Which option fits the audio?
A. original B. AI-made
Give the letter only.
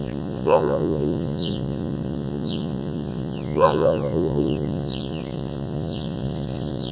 B